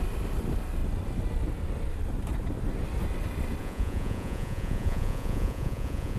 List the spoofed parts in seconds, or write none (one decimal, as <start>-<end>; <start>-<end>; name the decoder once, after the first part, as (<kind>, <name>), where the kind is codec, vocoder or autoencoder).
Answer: 3.6-6.2 (vocoder, Vocos)